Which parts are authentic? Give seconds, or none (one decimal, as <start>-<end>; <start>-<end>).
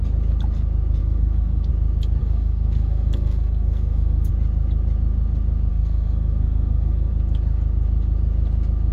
0.0-1.0; 1.7-2.2; 4.3-5.7; 7.1-8.9